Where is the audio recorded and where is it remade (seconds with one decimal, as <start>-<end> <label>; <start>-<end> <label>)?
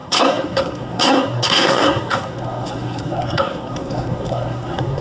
0.0-5.0 remade